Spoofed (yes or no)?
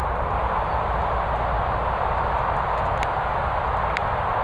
no